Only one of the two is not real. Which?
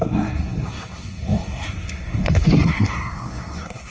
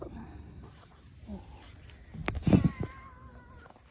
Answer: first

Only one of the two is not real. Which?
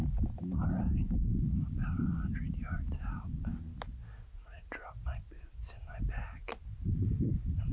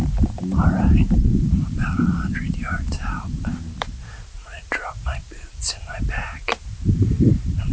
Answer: second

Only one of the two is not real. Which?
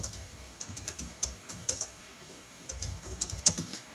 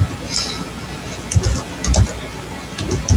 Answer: first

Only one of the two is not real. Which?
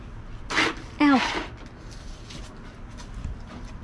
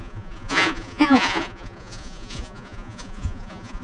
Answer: second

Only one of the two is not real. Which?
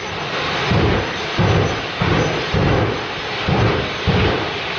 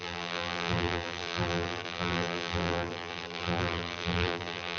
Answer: second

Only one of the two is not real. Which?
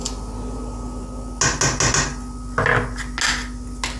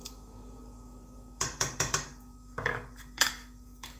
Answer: second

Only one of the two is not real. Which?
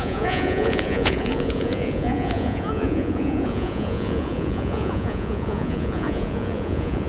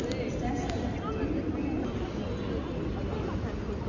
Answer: first